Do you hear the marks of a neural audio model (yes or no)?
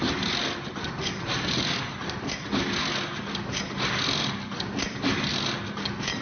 no